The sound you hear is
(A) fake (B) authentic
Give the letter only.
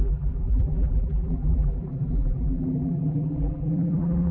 A